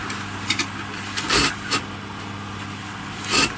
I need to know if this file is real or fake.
real